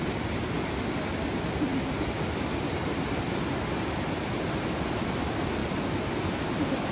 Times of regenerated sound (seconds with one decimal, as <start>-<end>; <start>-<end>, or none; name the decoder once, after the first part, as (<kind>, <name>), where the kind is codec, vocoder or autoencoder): none

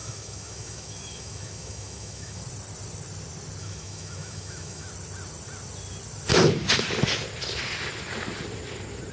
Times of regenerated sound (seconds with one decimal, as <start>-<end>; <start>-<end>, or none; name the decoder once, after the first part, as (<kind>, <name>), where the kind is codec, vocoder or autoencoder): 0.0-2.4 (autoencoder, DAC-VAE); 3.6-4.9

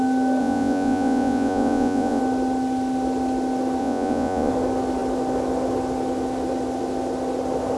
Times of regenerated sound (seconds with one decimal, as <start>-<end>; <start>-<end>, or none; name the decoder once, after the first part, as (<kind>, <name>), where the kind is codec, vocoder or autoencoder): 0.4-2.2 (vocoder, Vocos); 3.8-4.5

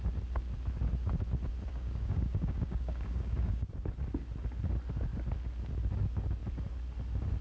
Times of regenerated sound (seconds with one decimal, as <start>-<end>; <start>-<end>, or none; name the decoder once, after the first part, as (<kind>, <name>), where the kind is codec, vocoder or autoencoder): 1.7-3.7 (codec, DAC)

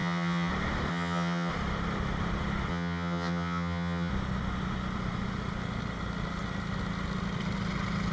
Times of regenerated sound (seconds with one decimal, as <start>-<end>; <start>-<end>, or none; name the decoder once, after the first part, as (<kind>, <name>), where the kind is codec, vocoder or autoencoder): 0.0-0.5 (vocoder, HiFi-GAN); 0.9-1.5; 2.7-4.1